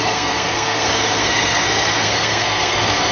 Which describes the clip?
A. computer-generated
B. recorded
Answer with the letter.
A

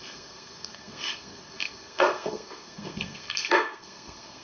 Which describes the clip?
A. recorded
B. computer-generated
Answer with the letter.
B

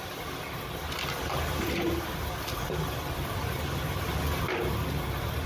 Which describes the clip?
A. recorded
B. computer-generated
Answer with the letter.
A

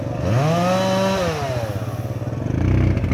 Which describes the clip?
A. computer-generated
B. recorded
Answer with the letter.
B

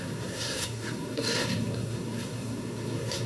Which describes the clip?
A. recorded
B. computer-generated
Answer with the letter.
B